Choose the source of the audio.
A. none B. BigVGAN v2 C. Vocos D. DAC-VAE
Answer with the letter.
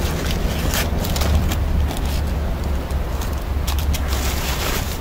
A